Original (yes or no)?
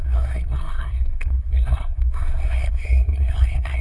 no